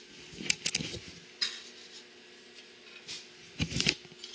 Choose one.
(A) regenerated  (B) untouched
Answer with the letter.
B